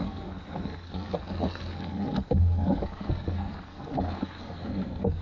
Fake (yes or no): yes